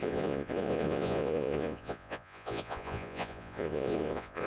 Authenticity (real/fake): fake